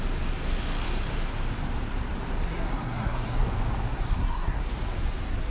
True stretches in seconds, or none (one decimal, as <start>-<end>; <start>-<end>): 0.0-2.4; 3.5-3.9; 4.7-5.5